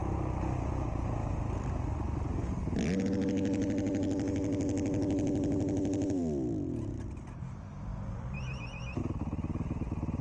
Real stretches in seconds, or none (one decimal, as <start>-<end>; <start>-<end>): 0.0-10.2